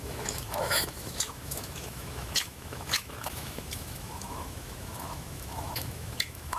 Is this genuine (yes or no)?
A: no